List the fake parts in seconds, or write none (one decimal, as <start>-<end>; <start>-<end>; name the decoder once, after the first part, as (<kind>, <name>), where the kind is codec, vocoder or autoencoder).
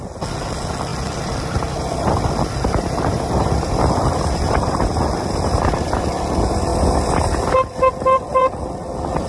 0.9-6.0 (vocoder, BigVGAN v2); 6.7-8.6